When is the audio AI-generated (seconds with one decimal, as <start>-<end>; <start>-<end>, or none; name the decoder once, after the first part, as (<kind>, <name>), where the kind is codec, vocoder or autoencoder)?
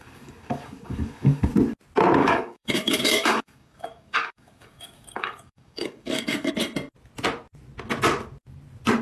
0.0-1.5 (codec, DAC); 2.2-6.5